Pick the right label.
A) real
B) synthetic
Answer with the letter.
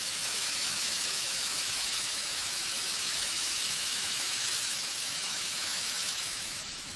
B